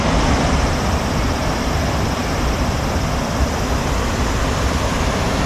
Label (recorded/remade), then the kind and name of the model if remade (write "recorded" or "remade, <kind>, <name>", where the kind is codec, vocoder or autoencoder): recorded